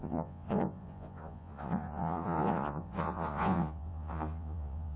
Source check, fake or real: fake